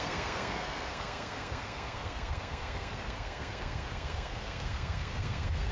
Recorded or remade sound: remade